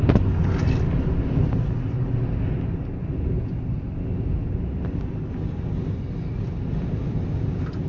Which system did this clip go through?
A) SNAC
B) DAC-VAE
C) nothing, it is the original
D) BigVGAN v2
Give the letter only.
C